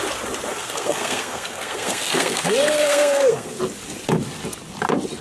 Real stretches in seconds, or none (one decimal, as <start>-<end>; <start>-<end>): 0.0-0.5; 3.6-5.2